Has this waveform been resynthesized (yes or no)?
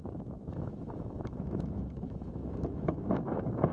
yes